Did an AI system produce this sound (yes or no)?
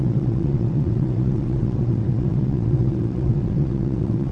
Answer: yes